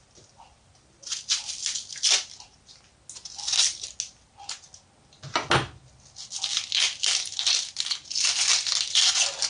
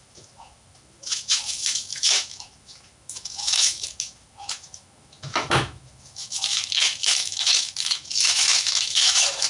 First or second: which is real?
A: first